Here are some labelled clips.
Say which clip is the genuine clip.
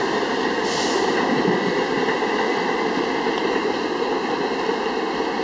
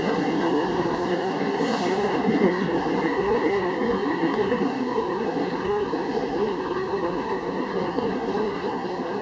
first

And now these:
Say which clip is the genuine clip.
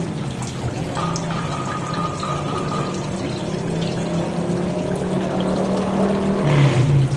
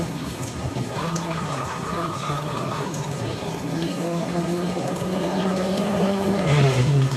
first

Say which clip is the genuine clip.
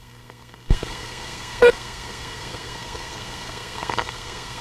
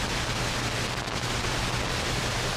second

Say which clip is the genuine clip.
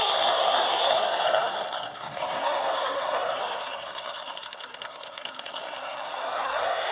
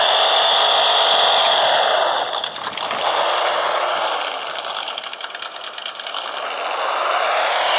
second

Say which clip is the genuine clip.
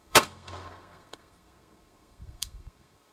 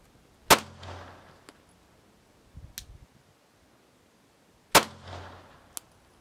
second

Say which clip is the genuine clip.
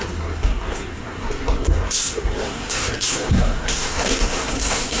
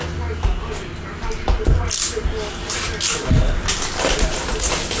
second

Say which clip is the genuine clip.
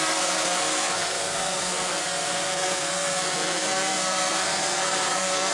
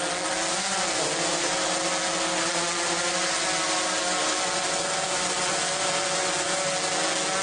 second